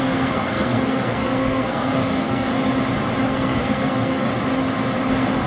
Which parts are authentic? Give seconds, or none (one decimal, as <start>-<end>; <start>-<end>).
2.5-3.2; 4.3-5.1